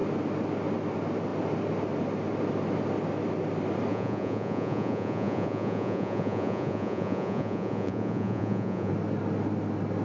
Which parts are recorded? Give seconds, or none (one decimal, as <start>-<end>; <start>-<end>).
0.0-3.9; 8.9-10.0